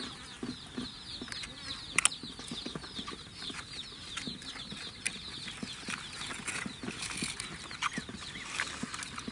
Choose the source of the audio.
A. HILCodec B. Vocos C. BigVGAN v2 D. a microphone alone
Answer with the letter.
D